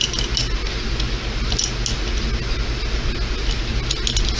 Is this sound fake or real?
real